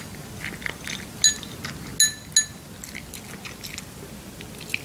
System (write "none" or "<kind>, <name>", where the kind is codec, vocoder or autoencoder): none